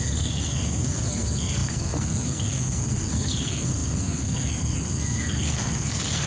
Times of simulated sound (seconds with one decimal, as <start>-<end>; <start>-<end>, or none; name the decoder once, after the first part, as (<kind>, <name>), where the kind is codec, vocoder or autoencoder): 0.0-6.3 (codec, SNAC)